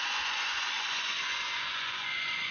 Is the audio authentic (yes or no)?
no